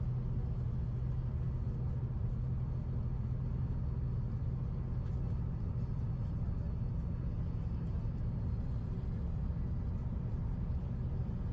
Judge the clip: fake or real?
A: real